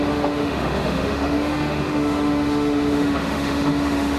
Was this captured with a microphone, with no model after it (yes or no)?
no